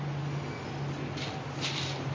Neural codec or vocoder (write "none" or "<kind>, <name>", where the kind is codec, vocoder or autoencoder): none